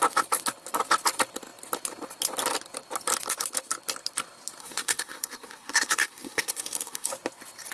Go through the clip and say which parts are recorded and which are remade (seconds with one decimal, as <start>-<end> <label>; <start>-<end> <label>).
0.0-4.6 recorded; 4.6-7.1 remade; 7.1-7.7 recorded